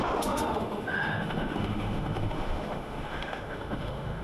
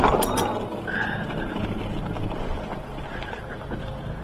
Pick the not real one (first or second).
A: first